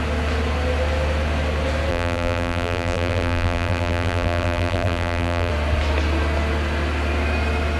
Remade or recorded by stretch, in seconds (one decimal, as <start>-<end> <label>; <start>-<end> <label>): 0.0-1.9 recorded; 1.9-5.5 remade; 5.5-7.8 recorded